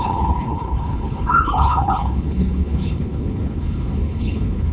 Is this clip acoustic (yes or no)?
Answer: no